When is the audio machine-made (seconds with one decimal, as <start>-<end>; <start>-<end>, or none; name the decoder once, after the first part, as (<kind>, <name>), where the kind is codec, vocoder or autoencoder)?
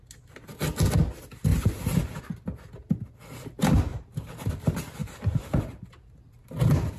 1.5-2.2 (vocoder, BigVGAN v2); 3.9-4.5; 5.0-5.6